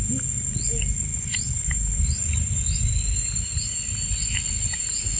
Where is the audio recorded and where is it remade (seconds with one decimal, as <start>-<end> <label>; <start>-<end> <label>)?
0.0-1.1 recorded; 1.1-4.2 remade; 4.2-5.2 recorded